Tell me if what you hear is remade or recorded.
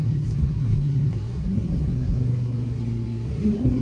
remade